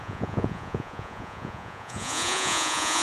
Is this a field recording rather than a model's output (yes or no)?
no